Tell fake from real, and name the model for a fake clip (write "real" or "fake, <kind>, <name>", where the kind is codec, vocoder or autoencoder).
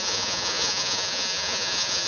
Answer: fake, vocoder, Vocos